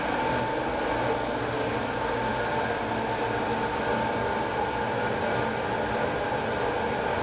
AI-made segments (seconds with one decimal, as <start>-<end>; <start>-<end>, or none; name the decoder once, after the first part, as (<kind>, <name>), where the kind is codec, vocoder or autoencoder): none